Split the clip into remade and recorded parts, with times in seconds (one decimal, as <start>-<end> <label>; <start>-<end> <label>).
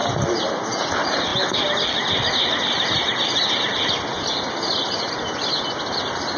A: 0.0-6.4 recorded